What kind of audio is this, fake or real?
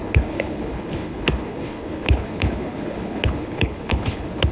fake